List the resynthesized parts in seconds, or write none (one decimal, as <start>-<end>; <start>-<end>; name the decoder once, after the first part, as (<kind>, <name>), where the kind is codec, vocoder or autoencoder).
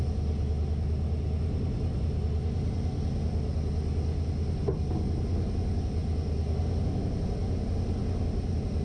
none